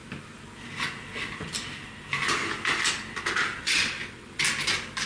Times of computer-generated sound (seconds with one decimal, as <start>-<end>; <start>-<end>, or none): 3.6-4.4